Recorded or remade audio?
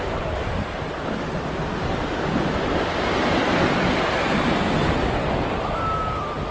recorded